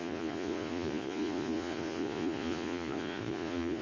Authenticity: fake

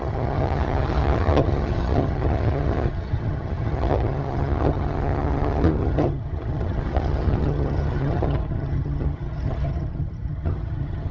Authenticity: fake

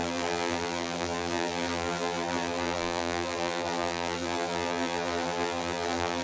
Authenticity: fake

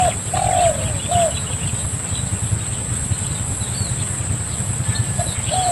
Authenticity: real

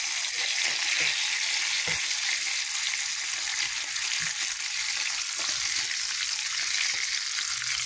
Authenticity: real